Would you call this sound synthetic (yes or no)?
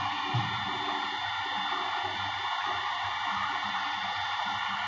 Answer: no